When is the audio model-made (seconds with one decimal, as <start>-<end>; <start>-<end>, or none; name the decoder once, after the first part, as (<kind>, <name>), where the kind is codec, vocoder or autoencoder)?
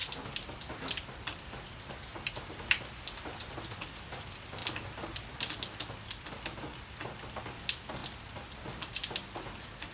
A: none